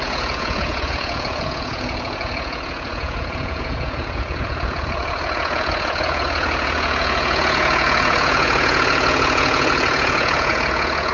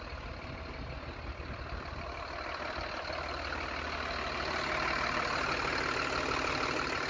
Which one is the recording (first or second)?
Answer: second